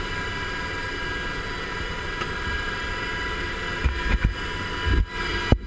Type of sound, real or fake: real